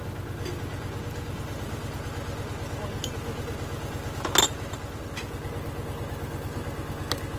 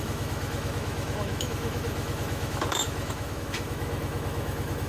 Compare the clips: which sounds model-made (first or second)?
second